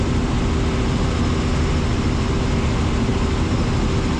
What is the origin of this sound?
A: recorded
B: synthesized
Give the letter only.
A